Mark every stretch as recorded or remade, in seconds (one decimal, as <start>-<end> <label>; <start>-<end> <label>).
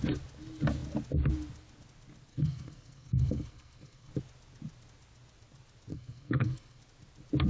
0.0-2.3 recorded; 2.3-4.1 remade; 4.1-5.9 recorded; 5.9-6.8 remade; 6.8-7.5 recorded